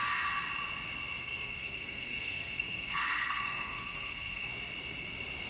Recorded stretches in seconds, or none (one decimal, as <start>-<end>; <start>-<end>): 0.0-1.2; 4.5-5.5